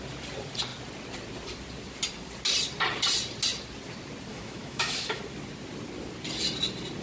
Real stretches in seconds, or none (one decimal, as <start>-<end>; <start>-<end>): 0.0-4.3; 5.2-7.0